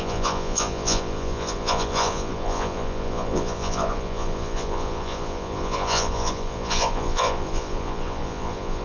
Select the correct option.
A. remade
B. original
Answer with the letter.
A